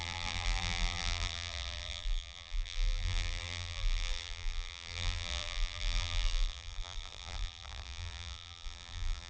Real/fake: fake